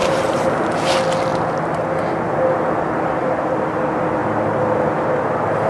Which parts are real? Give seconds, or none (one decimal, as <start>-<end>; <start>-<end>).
0.5-5.7